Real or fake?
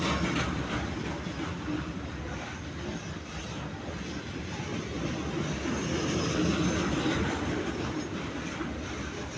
real